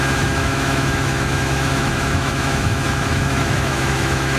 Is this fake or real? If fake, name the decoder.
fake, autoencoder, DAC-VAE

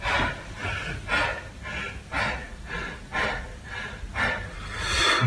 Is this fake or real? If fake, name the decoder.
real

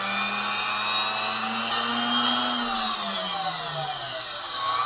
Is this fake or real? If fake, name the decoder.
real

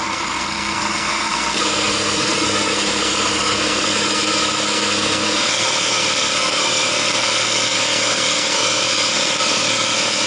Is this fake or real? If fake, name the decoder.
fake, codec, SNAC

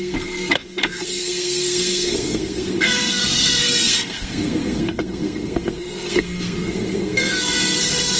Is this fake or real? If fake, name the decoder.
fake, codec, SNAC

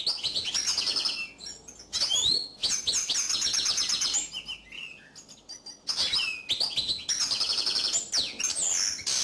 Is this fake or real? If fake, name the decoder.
real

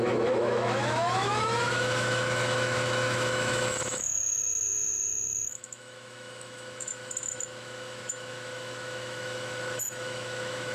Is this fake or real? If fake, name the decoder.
fake, autoencoder, DAC-VAE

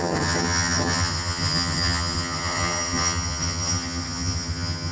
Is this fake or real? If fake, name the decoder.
fake, vocoder, HiFi-GAN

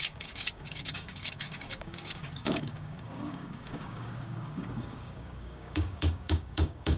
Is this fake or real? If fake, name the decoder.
fake, codec, DAC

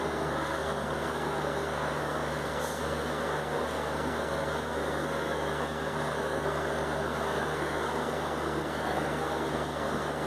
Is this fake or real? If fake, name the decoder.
fake, codec, SNAC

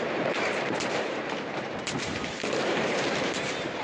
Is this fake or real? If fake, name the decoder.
fake, vocoder, BigVGAN v2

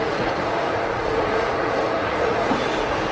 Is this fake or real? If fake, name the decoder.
fake, vocoder, Vocos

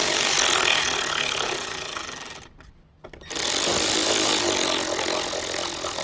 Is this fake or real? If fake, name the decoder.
real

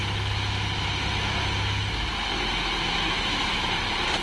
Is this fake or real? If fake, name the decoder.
real